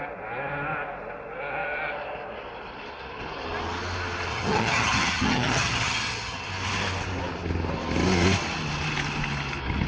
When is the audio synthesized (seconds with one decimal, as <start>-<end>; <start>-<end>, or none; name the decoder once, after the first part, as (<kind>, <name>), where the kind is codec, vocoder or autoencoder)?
4.3-6.5 (vocoder, HiFi-GAN)